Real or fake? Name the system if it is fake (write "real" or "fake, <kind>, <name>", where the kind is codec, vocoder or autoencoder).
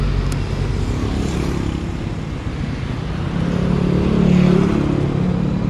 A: real